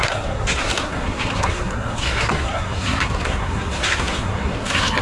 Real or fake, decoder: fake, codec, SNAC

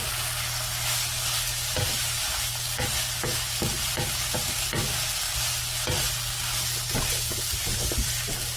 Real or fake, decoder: real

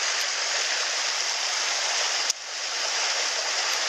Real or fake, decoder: real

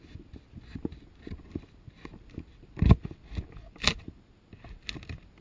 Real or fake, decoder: real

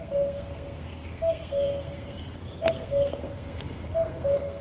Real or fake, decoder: fake, codec, SNAC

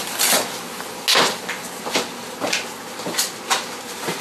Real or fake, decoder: real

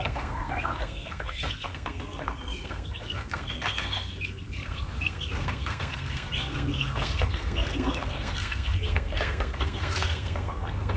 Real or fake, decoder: fake, codec, SNAC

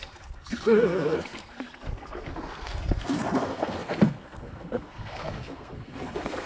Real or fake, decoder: fake, codec, SNAC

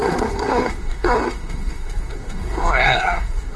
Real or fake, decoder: fake, codec, SNAC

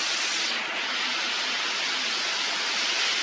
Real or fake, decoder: real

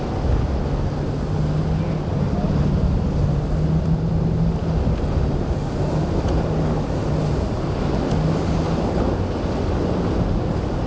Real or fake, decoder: real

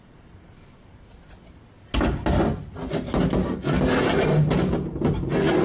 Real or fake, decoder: real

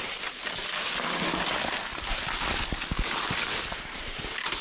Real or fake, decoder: real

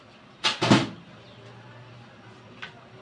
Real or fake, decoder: real